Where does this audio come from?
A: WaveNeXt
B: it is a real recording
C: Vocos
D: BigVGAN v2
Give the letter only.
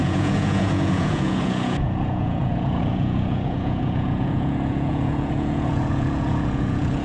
C